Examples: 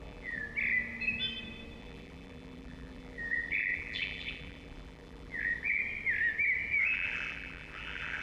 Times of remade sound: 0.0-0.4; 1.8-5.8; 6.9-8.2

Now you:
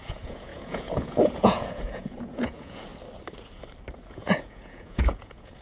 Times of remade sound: 0.0-2.9; 4.1-5.6

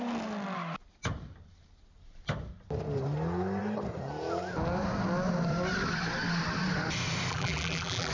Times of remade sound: 7.3-8.1

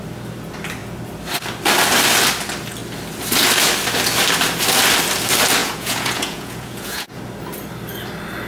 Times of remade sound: 5.6-7.2

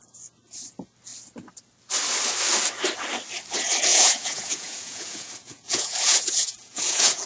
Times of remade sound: 3.9-7.3

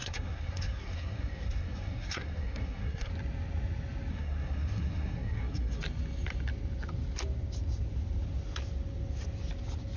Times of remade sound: 0.0-3.1; 4.1-5.8